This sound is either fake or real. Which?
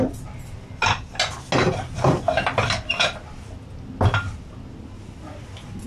real